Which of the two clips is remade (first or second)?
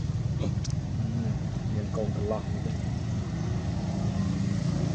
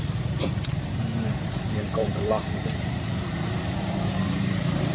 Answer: second